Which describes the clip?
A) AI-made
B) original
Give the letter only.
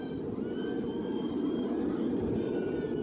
B